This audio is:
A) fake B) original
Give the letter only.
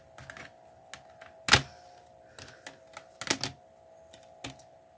B